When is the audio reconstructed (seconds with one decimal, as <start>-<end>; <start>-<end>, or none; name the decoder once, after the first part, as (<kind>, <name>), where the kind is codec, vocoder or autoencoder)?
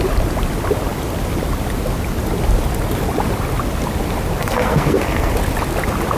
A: 4.4-5.3 (codec, SNAC)